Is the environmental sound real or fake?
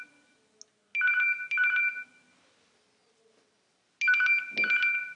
real